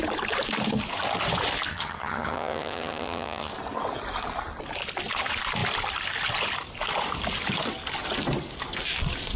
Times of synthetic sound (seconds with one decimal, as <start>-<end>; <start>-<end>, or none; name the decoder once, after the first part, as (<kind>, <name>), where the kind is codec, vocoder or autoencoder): 1.7-3.5 (vocoder, HiFi-GAN)